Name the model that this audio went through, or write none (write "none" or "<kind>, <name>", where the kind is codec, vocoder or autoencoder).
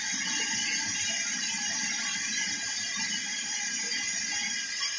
none